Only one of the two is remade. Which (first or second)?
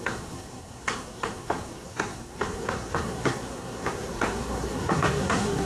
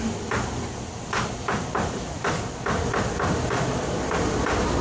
first